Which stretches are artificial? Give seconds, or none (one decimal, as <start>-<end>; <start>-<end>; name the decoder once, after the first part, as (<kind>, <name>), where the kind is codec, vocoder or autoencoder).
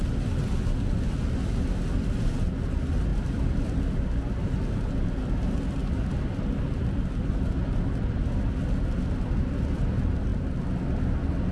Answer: 3.1-3.8 (vocoder, BigVGAN v2); 5.8-7.3; 10.3-10.8